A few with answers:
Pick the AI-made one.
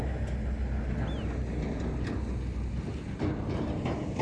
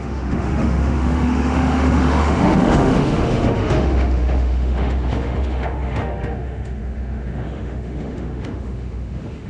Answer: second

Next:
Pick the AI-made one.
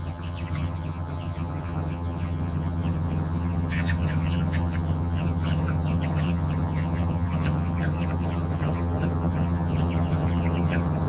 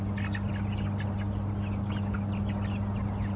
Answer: first